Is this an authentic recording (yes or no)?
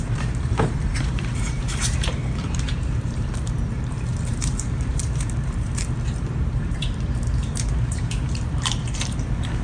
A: no